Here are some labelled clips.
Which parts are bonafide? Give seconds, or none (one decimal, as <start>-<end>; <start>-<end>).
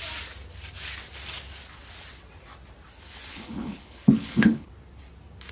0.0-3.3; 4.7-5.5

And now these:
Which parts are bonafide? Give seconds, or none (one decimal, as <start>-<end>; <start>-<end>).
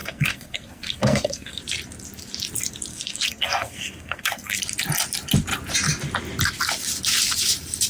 1.6-2.9; 4.6-7.9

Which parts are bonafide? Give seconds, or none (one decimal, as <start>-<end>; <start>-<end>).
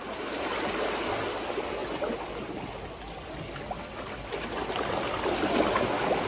0.0-1.8; 2.5-6.3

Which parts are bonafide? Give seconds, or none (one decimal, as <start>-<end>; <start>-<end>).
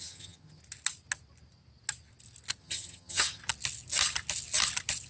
0.6-2.6; 3.4-5.1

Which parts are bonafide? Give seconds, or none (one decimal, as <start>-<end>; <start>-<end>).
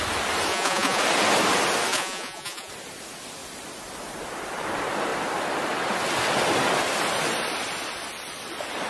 0.0-0.5; 1.0-1.9; 2.7-8.9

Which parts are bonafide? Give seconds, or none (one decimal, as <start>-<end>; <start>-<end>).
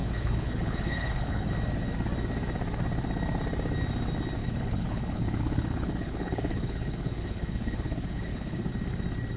1.5-4.4; 8.7-9.4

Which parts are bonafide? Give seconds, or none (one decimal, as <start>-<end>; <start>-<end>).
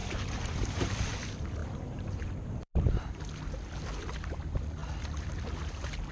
0.9-1.6; 3.2-6.1